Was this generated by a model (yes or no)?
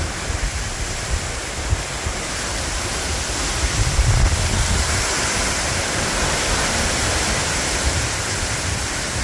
no